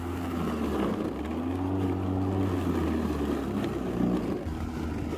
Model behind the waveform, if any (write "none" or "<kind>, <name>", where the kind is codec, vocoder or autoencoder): none